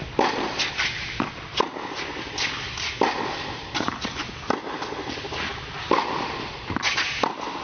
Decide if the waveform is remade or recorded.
recorded